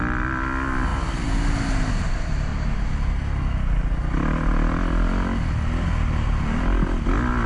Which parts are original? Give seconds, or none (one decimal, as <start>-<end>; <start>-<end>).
0.0-7.5